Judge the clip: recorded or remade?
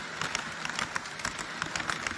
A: recorded